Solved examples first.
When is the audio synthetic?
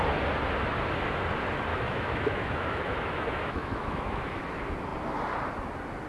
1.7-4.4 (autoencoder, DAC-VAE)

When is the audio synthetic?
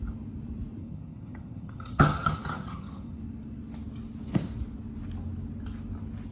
0.8-3.2 (vocoder, HiFi-GAN)